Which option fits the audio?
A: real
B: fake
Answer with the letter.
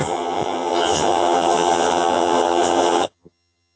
B